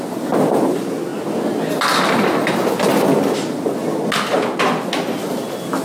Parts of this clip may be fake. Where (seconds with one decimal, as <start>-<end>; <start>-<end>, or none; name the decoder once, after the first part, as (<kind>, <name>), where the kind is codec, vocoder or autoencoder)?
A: none